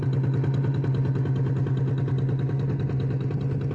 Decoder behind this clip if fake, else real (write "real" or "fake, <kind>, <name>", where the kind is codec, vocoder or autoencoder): real